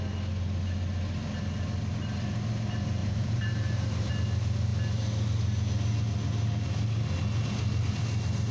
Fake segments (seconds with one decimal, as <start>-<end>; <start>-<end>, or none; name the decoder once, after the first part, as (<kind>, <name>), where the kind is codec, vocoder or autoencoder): 3.0-4.1 (vocoder, BigVGAN v2)